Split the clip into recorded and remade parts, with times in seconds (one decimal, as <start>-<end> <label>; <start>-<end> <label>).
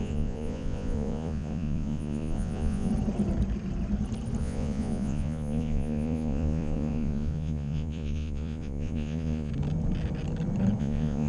0.0-2.9 remade; 2.9-4.4 recorded; 4.4-9.5 remade; 9.5-10.8 recorded; 10.8-11.3 remade